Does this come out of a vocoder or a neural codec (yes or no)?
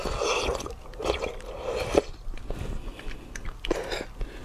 no